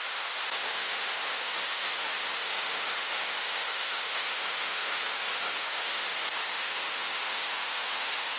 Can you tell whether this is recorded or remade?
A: remade